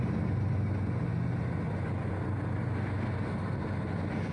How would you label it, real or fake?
real